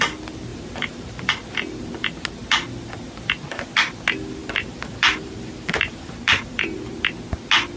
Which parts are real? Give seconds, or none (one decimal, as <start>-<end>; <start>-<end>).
0.0-0.5; 1.3-4.4; 6.9-7.8

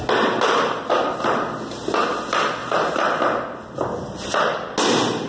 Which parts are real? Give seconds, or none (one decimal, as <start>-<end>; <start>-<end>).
0.0-2.6; 3.2-5.3

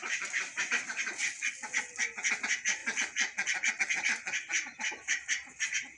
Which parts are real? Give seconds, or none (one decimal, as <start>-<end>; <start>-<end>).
1.2-2.4; 2.8-3.7

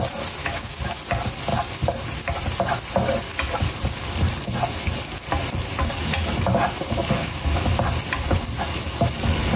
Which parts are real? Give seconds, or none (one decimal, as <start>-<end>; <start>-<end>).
0.0-0.4; 1.0-7.2; 7.8-9.6

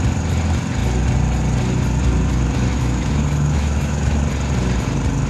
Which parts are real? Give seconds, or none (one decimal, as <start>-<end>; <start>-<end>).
0.0-2.7; 4.2-5.3